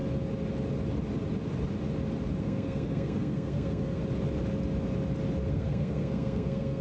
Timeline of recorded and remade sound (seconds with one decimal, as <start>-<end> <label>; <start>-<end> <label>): 0.0-2.4 recorded; 2.4-4.0 remade; 4.0-5.5 recorded; 5.5-6.8 remade